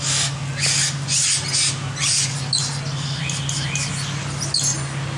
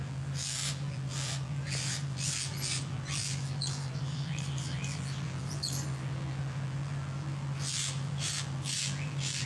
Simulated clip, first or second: second